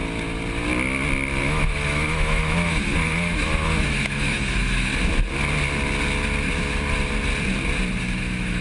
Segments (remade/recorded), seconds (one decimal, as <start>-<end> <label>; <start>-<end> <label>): 0.0-1.4 recorded; 1.4-4.9 remade; 4.9-8.0 recorded; 8.0-8.6 remade